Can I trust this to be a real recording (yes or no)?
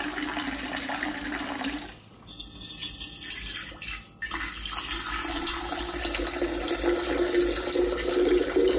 yes